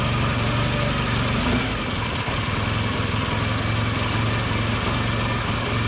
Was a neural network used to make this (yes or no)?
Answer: no